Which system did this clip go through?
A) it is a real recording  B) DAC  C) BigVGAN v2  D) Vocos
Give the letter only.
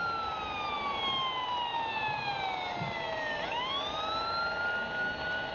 A